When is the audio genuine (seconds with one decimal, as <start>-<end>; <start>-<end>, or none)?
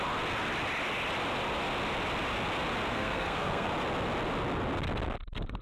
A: 0.0-2.9; 3.7-5.6